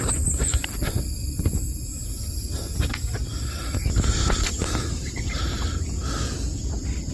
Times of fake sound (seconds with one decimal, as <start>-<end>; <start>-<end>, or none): none